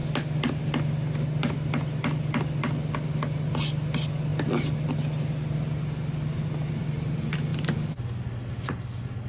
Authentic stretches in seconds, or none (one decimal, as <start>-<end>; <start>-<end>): 0.0-9.3